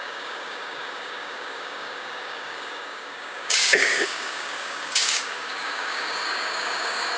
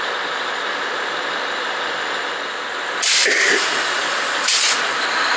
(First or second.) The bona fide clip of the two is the second